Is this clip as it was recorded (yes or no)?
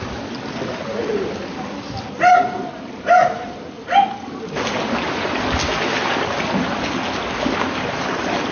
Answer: yes